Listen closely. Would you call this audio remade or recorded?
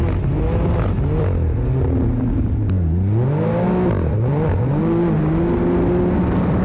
recorded